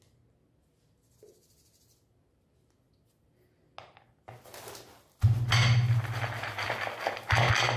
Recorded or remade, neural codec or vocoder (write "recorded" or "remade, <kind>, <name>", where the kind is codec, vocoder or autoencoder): recorded